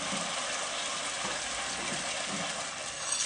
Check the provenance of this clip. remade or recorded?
recorded